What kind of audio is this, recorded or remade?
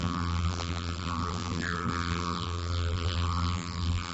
remade